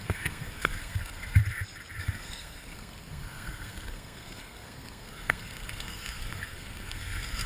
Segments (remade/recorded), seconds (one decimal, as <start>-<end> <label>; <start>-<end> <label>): 0.0-1.4 remade; 1.4-2.0 recorded; 2.0-7.5 remade